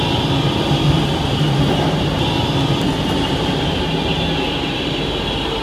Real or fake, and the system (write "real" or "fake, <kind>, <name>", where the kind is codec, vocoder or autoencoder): real